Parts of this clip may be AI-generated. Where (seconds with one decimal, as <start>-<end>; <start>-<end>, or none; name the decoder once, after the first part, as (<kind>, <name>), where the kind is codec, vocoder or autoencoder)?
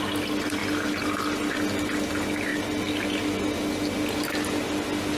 none